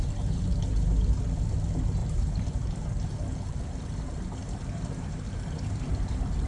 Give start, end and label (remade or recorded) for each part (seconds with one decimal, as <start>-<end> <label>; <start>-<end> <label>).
0.0-0.7 recorded; 0.7-1.3 remade; 1.3-2.0 recorded; 2.0-5.9 remade; 5.9-6.5 recorded